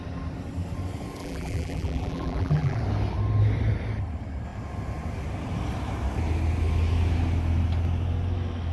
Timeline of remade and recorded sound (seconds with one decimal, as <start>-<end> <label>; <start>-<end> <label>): 0.0-1.2 recorded; 1.2-2.8 remade; 2.8-8.7 recorded